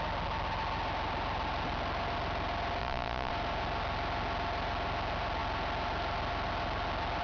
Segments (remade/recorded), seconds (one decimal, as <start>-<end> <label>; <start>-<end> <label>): 0.0-2.8 recorded; 2.8-3.3 remade; 3.3-7.2 recorded